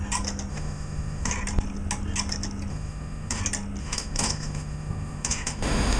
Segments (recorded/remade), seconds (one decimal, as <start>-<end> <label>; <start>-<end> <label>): 0.0-0.5 recorded; 0.5-1.3 remade; 1.3-2.7 recorded; 2.7-3.4 remade; 3.4-3.8 recorded; 3.8-6.0 remade